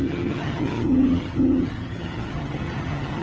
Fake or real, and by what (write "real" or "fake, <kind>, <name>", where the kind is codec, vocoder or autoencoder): fake, vocoder, HiFi-GAN